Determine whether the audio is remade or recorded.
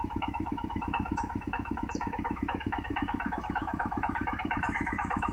remade